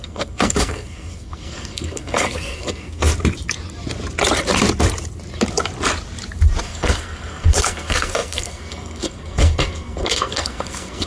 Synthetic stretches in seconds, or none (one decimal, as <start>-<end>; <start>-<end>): 0.0-3.1; 6.6-11.1